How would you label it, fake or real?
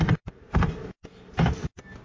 real